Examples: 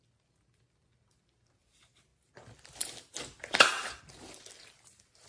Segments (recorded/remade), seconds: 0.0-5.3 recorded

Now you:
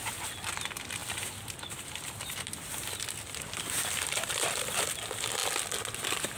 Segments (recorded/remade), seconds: 0.0-1.0 recorded; 1.0-4.8 remade; 4.8-6.4 recorded

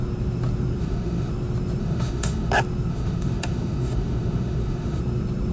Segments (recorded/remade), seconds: 0.0-0.8 recorded; 0.8-1.3 remade; 1.3-1.8 recorded; 1.8-2.5 remade; 2.5-2.9 recorded; 2.9-5.0 remade; 5.0-5.5 recorded

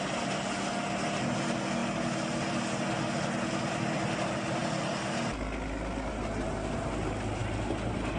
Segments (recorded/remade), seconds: 0.0-8.2 recorded

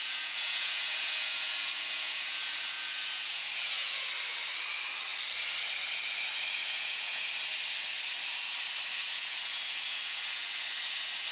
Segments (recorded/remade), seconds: 0.0-4.1 remade; 4.1-6.6 recorded; 6.6-7.3 remade; 7.3-8.9 recorded; 8.9-10.6 remade; 10.6-11.3 recorded

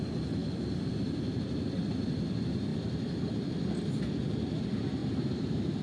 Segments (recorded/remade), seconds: 0.0-2.7 remade; 2.7-4.6 recorded; 4.6-5.8 remade

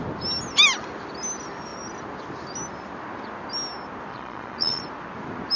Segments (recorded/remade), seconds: 0.0-4.1 recorded; 4.1-4.8 remade; 4.8-5.6 recorded